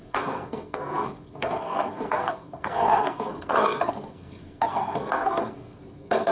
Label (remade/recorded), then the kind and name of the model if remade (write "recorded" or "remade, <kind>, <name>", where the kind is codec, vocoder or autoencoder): remade, codec, SNAC